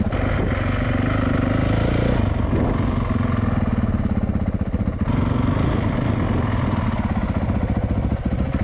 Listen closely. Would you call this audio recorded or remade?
recorded